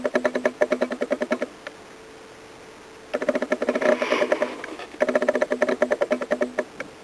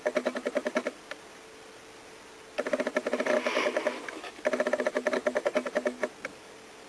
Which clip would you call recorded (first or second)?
first